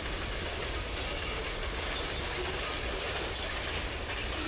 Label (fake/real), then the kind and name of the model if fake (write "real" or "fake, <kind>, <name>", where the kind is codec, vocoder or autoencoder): real